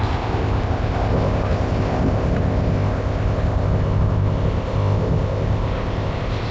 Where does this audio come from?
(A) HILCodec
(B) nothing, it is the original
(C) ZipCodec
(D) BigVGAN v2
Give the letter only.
C